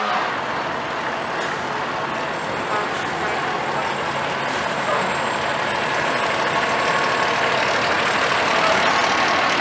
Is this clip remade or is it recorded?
recorded